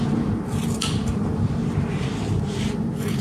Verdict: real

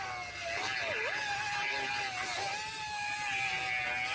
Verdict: real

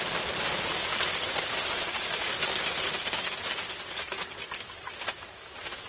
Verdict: real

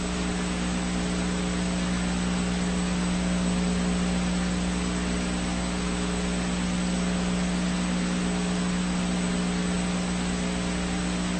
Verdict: fake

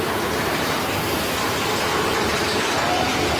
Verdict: real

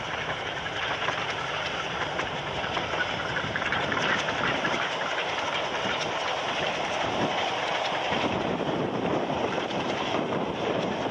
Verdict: fake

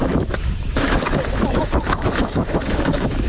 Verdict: fake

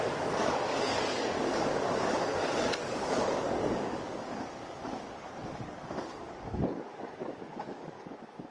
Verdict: fake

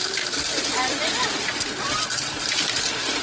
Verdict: real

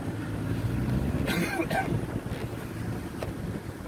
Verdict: real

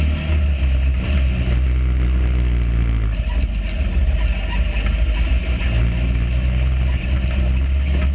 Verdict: real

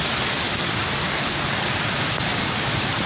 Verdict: real